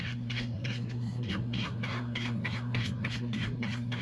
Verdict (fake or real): fake